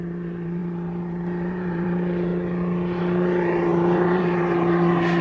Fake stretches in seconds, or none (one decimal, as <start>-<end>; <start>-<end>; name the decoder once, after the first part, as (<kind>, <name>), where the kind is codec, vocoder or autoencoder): 0.0-2.3 (vocoder, BigVGAN v2); 3.0-5.2